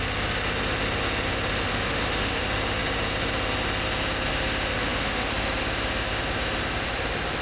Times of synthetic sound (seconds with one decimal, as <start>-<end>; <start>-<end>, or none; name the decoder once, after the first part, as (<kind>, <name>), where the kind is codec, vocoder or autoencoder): 1.7-2.4 (autoencoder, DAC-VAE); 4.7-5.3